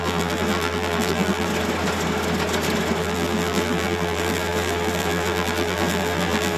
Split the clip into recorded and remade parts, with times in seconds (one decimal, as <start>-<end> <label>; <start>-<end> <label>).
0.0-1.5 remade; 1.5-3.0 recorded; 3.0-6.6 remade